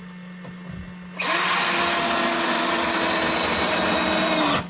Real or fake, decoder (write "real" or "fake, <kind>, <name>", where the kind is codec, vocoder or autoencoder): real